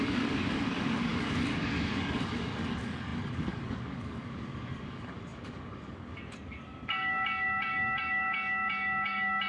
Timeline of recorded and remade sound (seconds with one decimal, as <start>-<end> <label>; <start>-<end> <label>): 0.0-9.5 remade